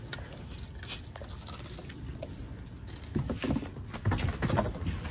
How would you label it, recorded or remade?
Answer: recorded